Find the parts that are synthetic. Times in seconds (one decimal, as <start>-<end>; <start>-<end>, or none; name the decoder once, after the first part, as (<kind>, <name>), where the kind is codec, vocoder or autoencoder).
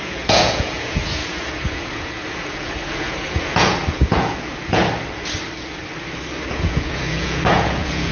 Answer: 0.0-4.8 (vocoder, Vocos); 6.5-8.1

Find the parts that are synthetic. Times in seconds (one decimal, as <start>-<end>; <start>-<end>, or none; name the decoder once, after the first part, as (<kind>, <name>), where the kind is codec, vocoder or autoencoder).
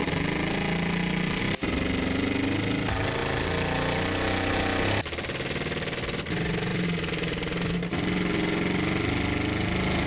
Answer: none